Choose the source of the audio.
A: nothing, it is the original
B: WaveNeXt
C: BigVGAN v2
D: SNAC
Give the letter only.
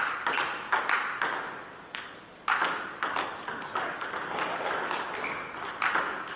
A